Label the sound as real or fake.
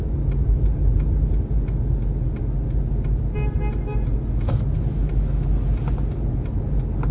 real